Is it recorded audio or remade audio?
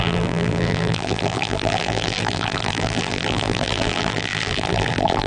remade